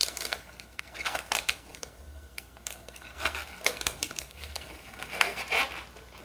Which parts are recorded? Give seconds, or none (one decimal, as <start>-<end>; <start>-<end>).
5.4-6.2